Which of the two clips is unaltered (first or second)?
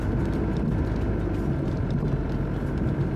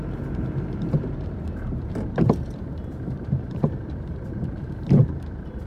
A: first